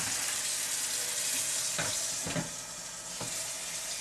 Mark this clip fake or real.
real